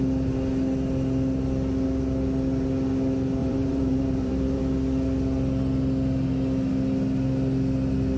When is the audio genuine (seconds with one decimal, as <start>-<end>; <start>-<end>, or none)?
0.0-3.4; 4.6-8.2